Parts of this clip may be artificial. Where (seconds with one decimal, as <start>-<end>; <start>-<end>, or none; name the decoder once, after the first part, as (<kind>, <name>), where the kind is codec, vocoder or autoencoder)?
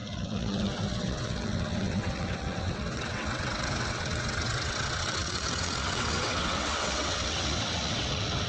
0.0-8.5 (vocoder, WaveNeXt)